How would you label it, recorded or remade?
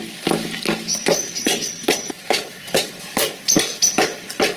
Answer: recorded